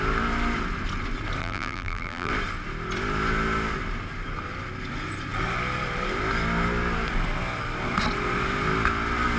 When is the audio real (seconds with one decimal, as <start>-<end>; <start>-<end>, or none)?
0.0-1.4; 2.3-9.4